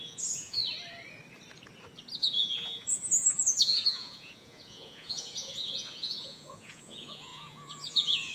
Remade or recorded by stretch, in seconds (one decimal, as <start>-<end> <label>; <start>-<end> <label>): 0.0-0.6 remade; 0.6-2.2 recorded; 2.2-8.3 remade